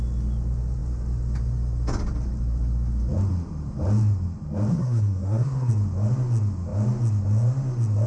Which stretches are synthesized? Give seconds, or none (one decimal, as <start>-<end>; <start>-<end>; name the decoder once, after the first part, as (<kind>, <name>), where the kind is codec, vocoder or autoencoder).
4.7-5.7 (codec, SNAC)